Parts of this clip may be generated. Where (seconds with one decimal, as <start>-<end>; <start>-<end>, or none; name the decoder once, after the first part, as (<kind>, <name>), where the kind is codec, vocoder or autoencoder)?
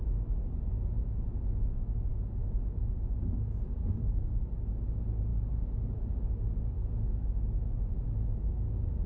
3.8-4.4 (codec, SNAC)